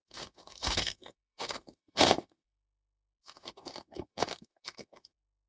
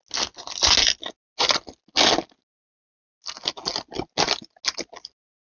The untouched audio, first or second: second